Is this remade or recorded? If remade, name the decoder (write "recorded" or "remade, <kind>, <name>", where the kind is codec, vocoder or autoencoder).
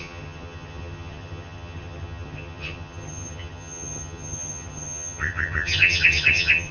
remade, vocoder, HiFi-GAN